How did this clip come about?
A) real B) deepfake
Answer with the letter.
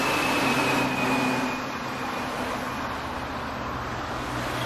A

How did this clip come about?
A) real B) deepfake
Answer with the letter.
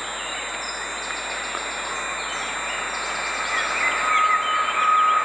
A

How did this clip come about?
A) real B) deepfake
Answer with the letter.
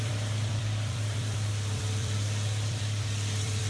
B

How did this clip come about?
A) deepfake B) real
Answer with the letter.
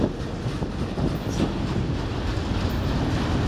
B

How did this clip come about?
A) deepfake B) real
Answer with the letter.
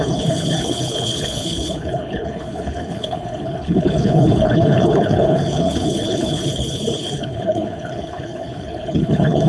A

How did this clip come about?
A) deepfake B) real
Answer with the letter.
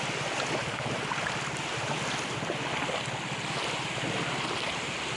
B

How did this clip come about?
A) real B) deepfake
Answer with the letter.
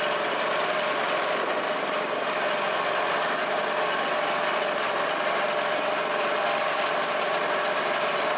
A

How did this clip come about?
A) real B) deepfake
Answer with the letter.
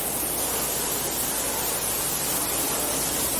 A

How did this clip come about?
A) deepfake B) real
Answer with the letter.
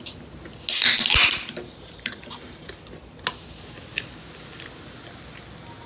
B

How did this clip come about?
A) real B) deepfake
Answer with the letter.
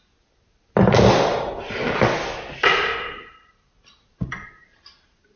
A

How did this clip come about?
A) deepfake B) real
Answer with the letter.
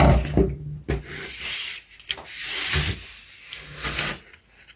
B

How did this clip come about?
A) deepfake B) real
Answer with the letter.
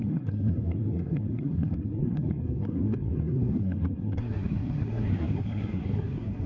A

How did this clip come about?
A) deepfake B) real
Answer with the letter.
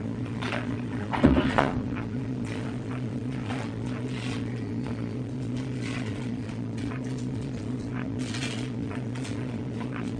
A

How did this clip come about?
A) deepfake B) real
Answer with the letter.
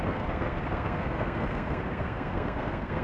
A